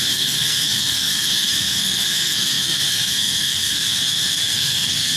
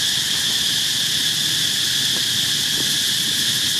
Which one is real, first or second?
second